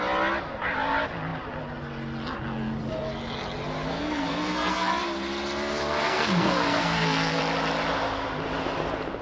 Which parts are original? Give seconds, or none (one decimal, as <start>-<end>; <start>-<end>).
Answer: 0.0-3.9; 4.9-5.8; 7.4-9.2